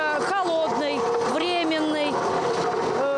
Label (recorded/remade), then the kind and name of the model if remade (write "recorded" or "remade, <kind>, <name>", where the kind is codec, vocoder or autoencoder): recorded